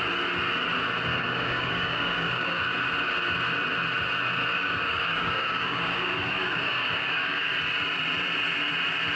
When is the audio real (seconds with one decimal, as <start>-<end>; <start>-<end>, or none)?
0.0-1.1; 2.7-4.5; 7.5-9.2